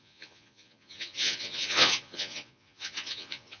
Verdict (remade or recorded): remade